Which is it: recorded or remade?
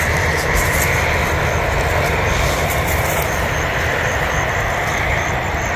recorded